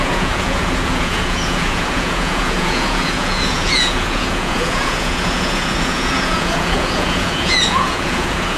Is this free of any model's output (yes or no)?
no